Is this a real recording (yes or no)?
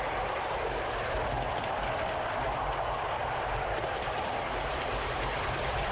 yes